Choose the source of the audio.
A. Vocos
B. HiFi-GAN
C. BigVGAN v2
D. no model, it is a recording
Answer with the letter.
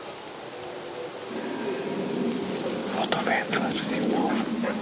D